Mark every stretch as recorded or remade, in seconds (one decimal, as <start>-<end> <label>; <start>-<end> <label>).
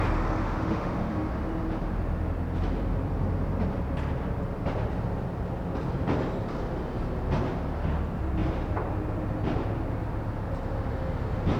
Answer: 0.0-0.4 recorded; 0.4-1.3 remade; 1.3-11.6 recorded